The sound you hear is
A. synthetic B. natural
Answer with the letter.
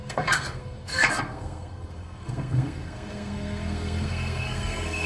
A